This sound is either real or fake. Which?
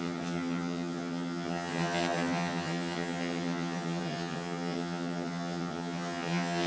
fake